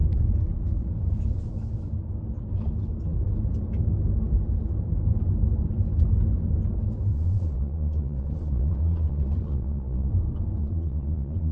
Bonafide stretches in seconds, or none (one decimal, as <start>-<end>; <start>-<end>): 0.0-7.1; 10.1-10.6